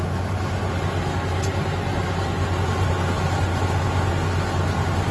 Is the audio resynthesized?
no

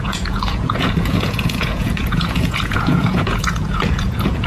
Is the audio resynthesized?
yes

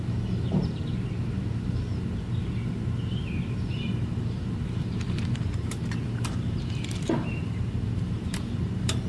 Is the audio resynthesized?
yes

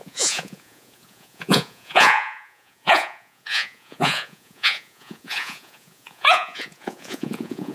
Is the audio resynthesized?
yes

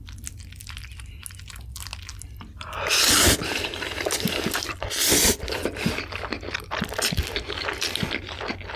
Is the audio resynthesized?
no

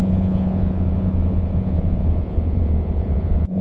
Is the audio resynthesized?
yes